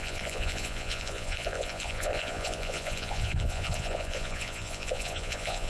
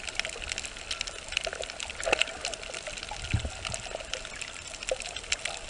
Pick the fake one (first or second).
first